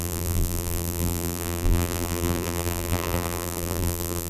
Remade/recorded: remade